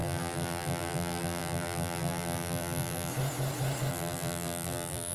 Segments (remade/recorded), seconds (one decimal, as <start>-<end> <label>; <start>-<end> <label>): 0.0-3.1 remade; 3.1-3.9 recorded; 3.9-5.1 remade